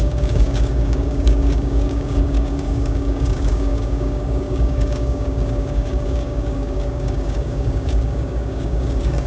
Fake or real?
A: fake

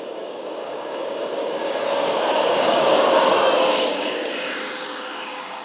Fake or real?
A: fake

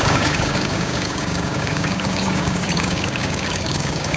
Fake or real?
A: fake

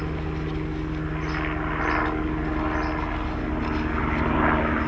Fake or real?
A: real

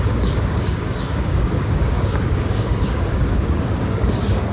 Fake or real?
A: fake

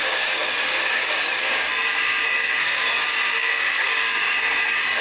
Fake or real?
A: fake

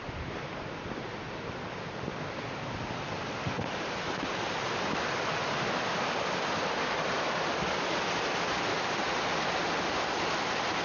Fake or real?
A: real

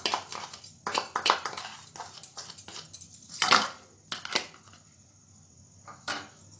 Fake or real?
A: real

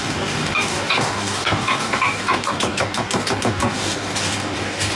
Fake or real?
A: fake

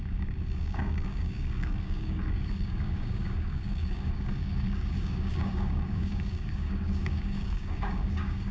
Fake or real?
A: fake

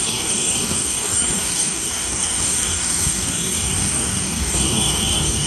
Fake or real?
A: fake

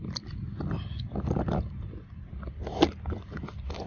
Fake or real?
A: real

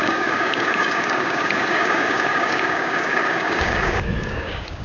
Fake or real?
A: fake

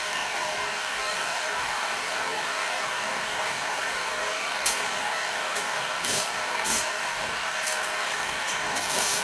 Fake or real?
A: fake